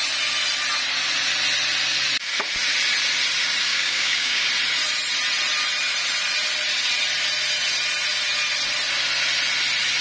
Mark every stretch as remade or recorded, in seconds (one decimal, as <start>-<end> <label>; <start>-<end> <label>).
0.0-3.7 recorded; 3.7-4.5 remade; 4.5-10.0 recorded